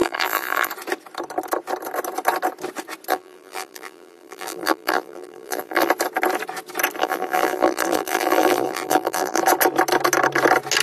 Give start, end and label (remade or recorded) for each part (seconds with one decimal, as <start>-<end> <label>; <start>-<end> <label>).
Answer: 0.0-0.7 remade; 0.7-3.1 recorded; 3.1-5.9 remade; 5.9-7.0 recorded; 7.0-9.4 remade; 9.4-10.8 recorded